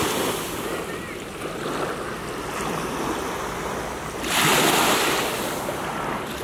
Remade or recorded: recorded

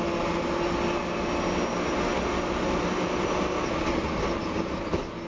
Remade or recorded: recorded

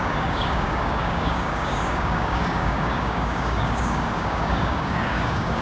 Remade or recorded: remade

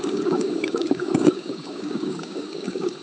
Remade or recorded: remade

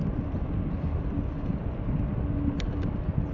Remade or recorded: recorded